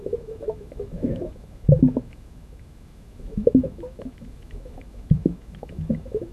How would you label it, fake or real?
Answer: fake